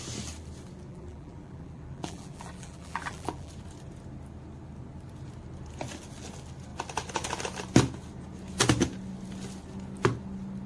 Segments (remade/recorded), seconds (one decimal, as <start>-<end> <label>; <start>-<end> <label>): 0.0-0.9 recorded; 0.9-3.5 remade; 3.5-10.7 recorded